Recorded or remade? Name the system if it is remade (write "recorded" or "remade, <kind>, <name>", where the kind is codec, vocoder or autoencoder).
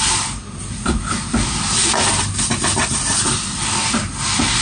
recorded